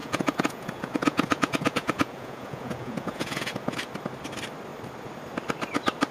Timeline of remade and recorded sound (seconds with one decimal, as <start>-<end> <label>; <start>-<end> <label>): 0.0-3.7 remade; 3.7-6.1 recorded